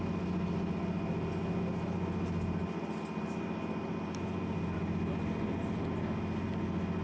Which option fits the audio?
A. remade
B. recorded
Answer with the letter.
B